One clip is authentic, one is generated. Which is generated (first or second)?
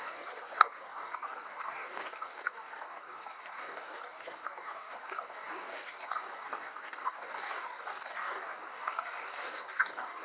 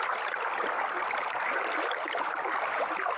first